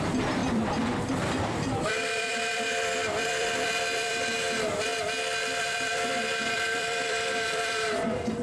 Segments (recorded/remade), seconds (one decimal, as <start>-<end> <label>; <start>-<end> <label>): 0.0-4.9 remade; 4.9-5.6 recorded; 5.6-8.4 remade